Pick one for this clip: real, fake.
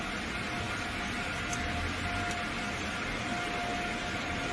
real